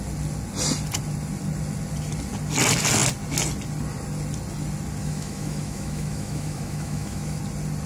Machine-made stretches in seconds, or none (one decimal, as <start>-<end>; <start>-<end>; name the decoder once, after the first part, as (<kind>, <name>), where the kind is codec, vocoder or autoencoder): 5.0-7.4 (autoencoder, DAC-VAE)